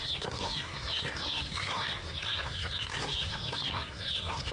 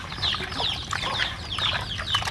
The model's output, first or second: first